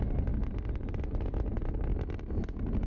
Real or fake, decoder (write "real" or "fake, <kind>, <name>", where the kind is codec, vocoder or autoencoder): real